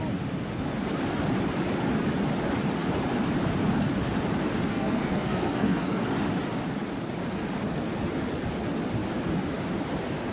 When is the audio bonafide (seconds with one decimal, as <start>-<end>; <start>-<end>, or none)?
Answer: 0.0-4.7; 6.0-10.3